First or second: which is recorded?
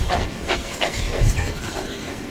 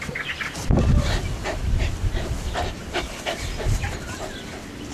second